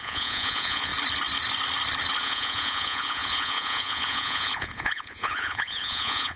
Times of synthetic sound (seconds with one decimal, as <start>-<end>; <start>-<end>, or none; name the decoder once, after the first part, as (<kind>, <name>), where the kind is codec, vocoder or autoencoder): 0.0-0.9 (vocoder, Vocos); 2.2-6.4